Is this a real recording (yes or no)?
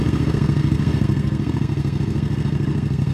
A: no